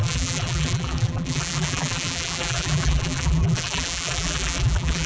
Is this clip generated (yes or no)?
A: yes